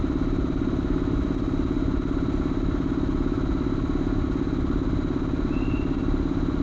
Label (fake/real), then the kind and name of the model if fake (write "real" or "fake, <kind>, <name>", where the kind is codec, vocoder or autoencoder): real